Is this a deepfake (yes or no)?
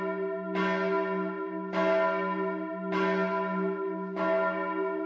no